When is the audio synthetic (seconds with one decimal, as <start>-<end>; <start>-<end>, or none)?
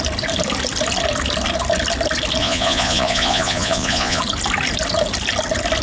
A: 2.4-4.2